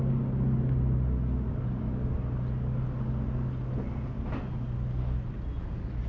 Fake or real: real